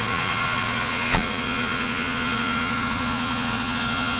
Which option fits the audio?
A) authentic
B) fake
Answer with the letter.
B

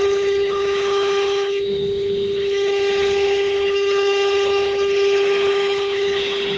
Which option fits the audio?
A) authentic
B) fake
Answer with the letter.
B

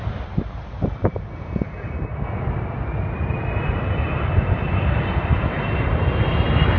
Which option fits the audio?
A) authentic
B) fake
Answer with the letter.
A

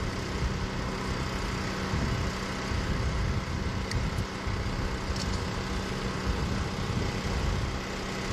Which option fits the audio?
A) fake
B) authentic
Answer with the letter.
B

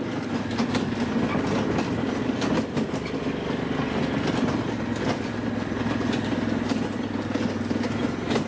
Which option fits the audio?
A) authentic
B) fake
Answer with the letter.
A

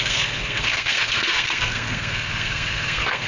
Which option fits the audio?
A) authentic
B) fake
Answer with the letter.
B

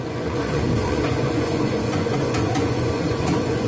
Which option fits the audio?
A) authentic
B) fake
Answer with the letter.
B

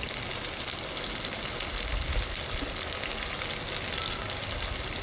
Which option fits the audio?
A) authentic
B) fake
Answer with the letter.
A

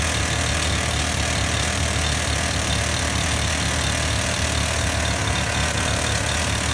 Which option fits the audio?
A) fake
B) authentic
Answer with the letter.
B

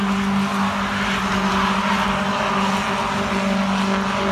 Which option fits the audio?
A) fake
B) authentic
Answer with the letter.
B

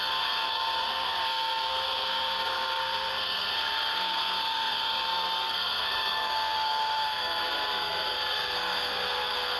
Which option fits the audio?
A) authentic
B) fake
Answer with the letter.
B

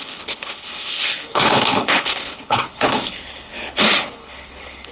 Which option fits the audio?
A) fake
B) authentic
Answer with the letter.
A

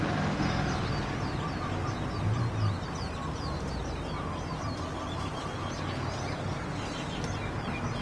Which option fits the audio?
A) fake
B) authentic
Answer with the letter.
B